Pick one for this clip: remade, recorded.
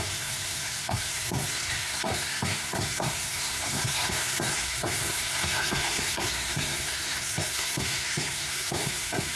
remade